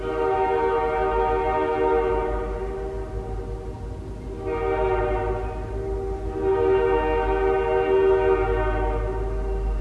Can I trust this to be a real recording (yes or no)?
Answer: yes